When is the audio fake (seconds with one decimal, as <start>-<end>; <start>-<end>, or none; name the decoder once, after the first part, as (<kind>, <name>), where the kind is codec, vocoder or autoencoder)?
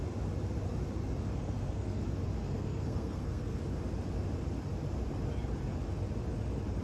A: 1.3-2.0 (codec, SNAC); 2.4-3.6